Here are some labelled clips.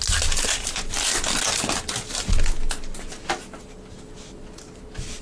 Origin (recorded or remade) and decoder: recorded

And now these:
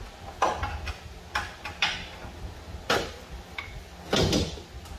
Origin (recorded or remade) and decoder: recorded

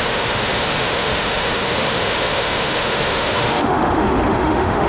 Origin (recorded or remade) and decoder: remade, autoencoder, DAC-VAE